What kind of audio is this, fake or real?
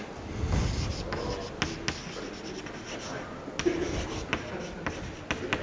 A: real